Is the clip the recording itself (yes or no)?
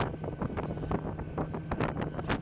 yes